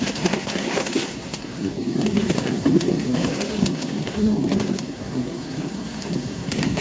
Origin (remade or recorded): remade